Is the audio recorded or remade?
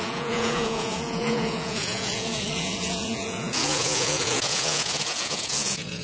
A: remade